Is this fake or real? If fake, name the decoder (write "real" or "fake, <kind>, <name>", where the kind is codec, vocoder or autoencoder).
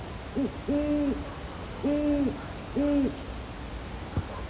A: real